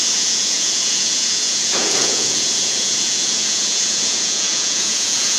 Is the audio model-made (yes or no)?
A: yes